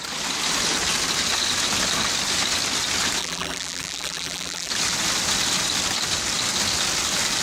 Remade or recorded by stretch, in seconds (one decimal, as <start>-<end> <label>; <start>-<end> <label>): 0.0-3.2 recorded; 3.2-4.7 remade; 4.7-7.4 recorded